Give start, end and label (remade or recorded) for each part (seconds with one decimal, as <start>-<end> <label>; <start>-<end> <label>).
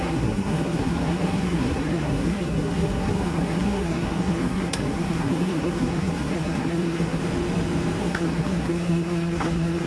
0.0-7.2 remade; 7.2-8.0 recorded; 8.0-9.9 remade